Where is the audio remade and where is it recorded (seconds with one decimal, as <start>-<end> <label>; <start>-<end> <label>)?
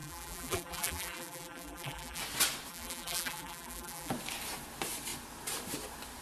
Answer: 0.0-2.2 remade; 2.2-2.7 recorded; 2.7-4.1 remade; 4.1-6.2 recorded